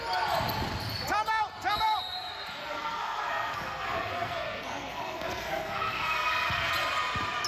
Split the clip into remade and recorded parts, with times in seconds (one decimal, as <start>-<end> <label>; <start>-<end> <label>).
0.0-2.6 recorded; 2.6-6.7 remade; 6.7-7.5 recorded